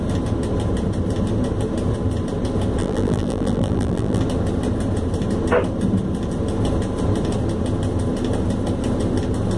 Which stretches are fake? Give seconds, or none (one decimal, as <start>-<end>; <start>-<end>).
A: 2.8-4.2

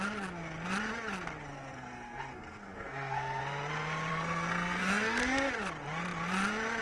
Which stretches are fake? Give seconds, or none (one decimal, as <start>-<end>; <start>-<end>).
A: 1.5-3.4; 4.1-5.2